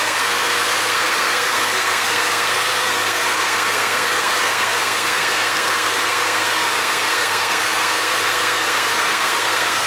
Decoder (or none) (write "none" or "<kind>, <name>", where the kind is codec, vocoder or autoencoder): codec, SNAC